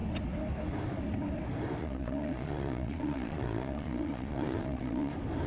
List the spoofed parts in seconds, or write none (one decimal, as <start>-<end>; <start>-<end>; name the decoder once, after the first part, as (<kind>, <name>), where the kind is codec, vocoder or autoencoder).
1.8-5.1 (vocoder, Vocos)